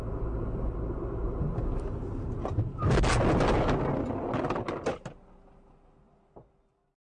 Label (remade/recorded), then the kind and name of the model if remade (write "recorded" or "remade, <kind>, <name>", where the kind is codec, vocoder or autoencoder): recorded